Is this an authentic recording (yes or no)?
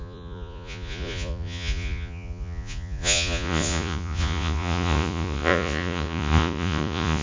no